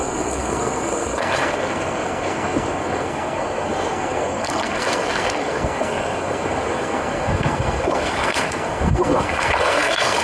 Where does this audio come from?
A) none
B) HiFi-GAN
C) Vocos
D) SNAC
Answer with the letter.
D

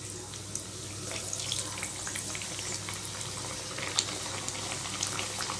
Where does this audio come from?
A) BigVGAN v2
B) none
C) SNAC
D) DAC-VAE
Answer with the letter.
B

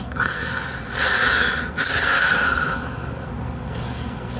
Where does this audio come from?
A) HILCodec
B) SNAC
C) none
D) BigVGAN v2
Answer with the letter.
B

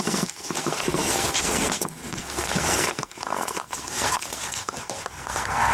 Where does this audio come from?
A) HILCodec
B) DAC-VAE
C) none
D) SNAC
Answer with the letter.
D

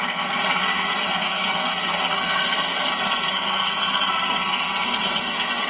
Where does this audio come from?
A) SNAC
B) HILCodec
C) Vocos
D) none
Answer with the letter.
A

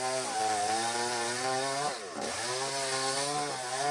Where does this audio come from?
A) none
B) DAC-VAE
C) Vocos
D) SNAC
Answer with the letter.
A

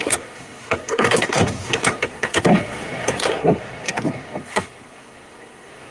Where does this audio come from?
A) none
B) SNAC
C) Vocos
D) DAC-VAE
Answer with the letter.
B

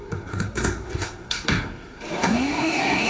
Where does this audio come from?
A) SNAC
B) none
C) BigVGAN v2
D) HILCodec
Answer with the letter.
A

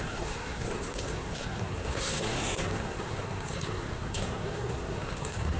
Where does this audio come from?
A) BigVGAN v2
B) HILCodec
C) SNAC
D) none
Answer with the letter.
C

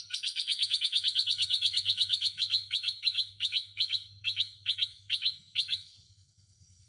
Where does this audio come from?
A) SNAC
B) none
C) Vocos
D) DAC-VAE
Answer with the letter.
A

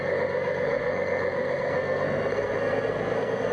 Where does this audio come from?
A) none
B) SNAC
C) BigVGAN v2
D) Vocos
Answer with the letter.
B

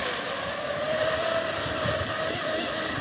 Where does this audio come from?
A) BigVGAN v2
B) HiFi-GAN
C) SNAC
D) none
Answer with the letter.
D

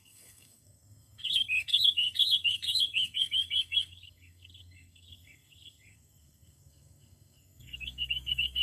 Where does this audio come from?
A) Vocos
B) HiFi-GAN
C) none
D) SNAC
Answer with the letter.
D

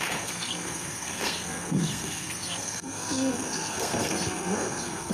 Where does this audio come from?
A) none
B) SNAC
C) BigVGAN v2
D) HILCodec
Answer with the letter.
B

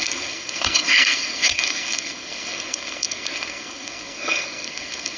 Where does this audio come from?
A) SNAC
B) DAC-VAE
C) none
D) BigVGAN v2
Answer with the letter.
A